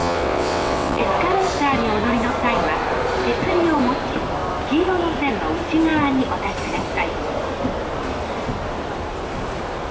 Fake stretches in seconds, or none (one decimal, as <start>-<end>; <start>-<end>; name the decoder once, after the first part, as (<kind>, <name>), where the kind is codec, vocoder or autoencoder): 0.0-1.0 (vocoder, WaveNeXt)